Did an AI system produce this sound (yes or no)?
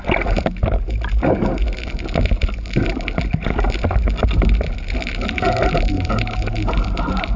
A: no